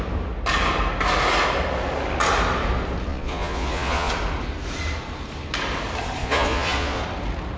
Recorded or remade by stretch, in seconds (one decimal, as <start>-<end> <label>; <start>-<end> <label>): 0.0-3.1 recorded; 3.1-4.1 remade; 4.1-6.2 recorded; 6.2-7.0 remade; 7.0-7.6 recorded